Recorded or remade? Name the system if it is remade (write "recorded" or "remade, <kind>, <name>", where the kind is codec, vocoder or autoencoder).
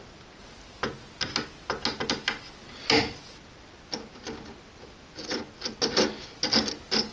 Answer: recorded